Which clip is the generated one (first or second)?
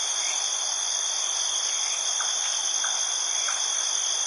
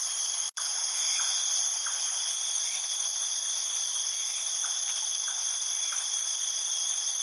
second